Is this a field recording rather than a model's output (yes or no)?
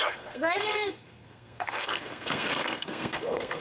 no